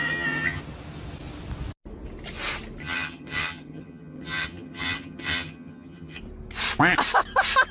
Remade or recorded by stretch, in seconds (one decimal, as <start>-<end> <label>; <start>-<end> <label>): 0.0-0.6 remade; 0.6-2.8 recorded; 2.8-6.2 remade; 6.2-7.7 recorded